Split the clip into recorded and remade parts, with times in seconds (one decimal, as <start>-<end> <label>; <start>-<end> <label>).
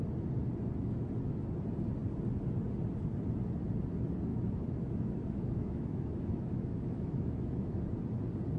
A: 0.0-4.3 recorded; 4.3-7.8 remade; 7.8-8.6 recorded